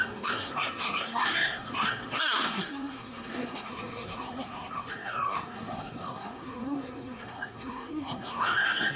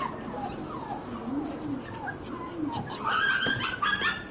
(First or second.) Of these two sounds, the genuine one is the second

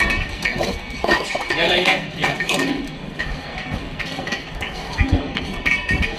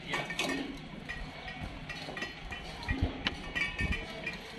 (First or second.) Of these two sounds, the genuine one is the second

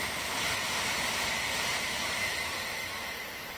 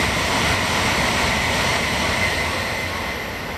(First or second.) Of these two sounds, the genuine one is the second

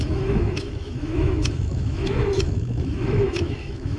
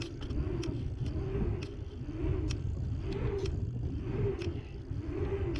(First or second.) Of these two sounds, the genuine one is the second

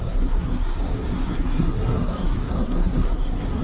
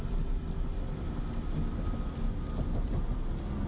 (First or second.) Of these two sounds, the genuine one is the second